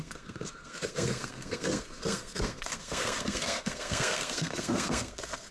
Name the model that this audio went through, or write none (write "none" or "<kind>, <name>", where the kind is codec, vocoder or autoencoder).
codec, SNAC